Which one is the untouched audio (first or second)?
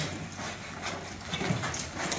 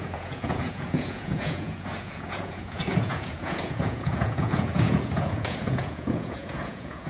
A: first